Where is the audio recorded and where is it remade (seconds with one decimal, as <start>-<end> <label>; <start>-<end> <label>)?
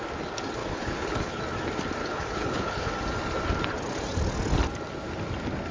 0.0-0.6 recorded; 0.6-1.4 remade; 1.4-2.0 recorded; 2.0-2.9 remade; 2.9-5.7 recorded